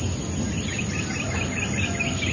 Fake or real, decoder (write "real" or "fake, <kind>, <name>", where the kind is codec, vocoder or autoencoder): real